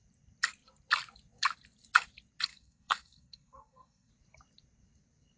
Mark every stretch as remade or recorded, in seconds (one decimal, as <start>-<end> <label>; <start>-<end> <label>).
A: 0.0-2.5 recorded; 2.5-4.1 remade; 4.1-5.4 recorded